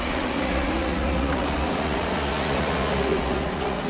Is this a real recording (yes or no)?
no